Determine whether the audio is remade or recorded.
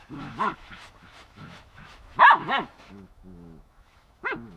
remade